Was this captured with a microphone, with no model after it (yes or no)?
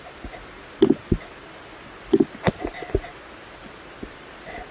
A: yes